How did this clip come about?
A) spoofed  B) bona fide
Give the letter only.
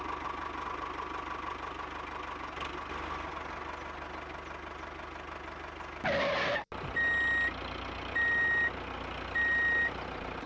B